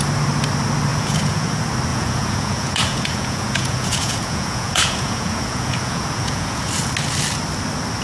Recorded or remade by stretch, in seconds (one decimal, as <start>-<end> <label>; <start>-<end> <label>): 0.0-0.9 recorded; 0.9-1.5 remade; 1.5-1.9 recorded; 1.9-6.7 remade; 6.7-8.0 recorded